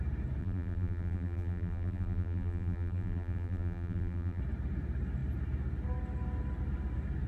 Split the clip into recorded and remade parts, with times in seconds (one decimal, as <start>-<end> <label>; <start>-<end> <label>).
0.0-0.4 recorded; 0.4-4.4 remade; 4.4-7.3 recorded